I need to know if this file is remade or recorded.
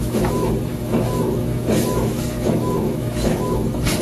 remade